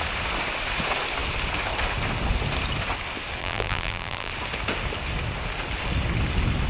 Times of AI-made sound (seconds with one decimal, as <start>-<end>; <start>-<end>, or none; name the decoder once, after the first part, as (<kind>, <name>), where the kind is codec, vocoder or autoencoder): 3.4-4.3 (vocoder, BigVGAN v2)